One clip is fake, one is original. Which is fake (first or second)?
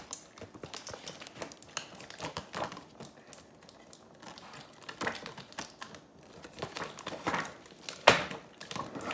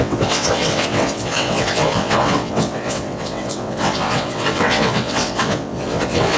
second